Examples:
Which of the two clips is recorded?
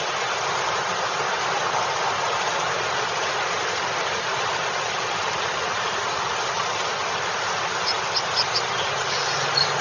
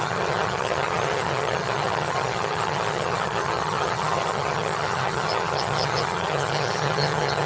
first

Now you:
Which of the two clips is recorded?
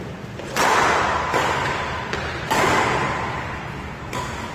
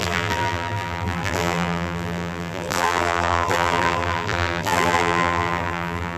first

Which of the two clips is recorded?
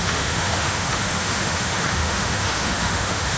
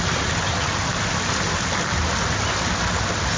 second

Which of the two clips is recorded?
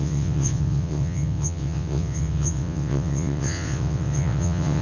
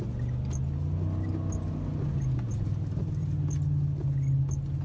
second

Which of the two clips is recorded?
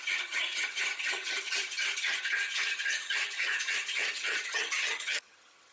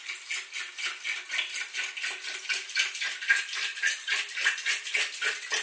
second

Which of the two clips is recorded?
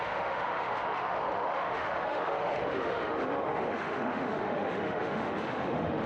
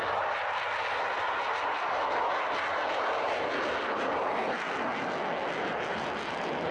second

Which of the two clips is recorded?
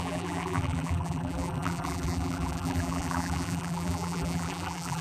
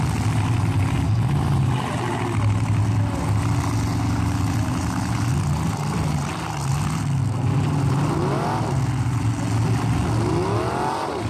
second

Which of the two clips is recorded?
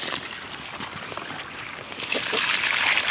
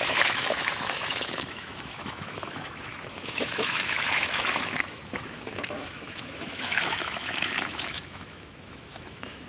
first